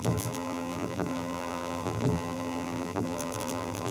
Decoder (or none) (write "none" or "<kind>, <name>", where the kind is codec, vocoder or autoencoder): vocoder, BigVGAN v2